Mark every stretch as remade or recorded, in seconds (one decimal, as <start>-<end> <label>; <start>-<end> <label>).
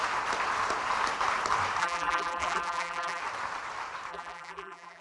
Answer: 0.0-1.8 recorded; 1.8-3.2 remade; 3.2-4.1 recorded; 4.1-5.0 remade